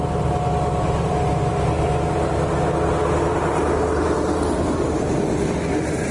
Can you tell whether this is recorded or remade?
recorded